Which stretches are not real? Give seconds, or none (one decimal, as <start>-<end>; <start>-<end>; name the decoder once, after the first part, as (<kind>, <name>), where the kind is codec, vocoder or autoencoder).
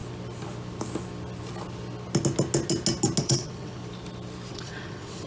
3.2-3.8 (vocoder, WaveNeXt); 4.5-5.3